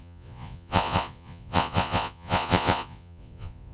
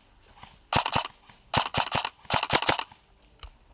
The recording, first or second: second